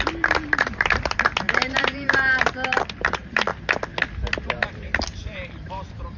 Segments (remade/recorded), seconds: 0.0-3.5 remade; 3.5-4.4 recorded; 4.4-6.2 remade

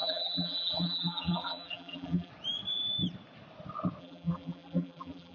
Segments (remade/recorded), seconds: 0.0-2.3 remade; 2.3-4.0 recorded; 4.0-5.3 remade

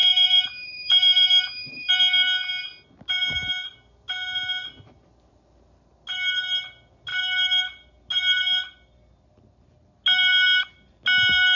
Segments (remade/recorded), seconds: 0.0-1.9 remade; 1.9-11.5 recorded

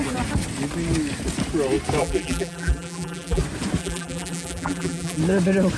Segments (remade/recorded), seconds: 0.0-2.0 recorded; 2.0-3.4 remade; 3.4-3.8 recorded; 3.8-5.2 remade; 5.2-5.8 recorded

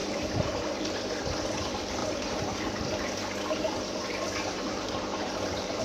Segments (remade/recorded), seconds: 0.0-1.1 remade; 1.1-2.0 recorded; 2.0-5.8 remade

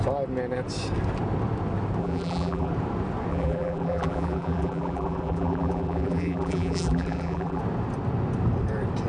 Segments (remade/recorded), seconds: 0.0-2.0 recorded; 2.0-2.7 remade; 2.7-3.3 recorded; 3.3-7.6 remade; 7.6-9.1 recorded

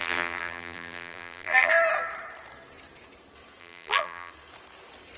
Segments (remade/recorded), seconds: 0.0-1.7 remade; 1.7-3.6 recorded; 3.6-4.3 remade; 4.3-5.2 recorded